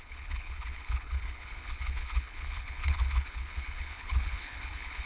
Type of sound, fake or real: fake